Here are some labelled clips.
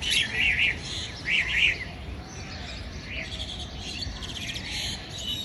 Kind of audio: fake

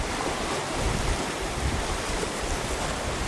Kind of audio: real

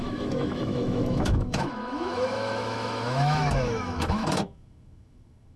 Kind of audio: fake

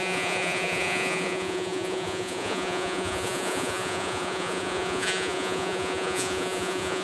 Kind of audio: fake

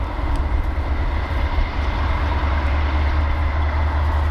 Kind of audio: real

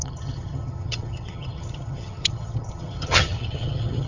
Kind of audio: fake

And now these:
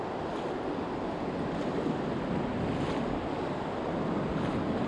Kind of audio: real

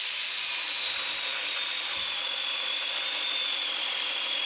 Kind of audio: real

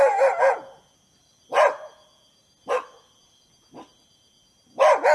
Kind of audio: real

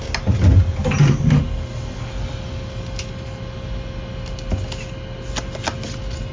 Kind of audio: real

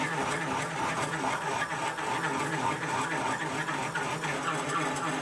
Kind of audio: real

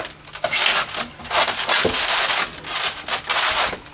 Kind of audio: real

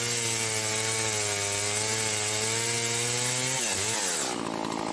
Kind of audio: real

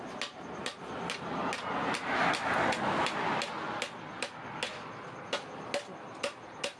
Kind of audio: real